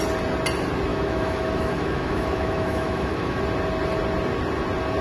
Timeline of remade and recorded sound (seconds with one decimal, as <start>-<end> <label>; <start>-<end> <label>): 0.0-0.9 recorded; 0.9-3.4 remade; 3.4-5.0 recorded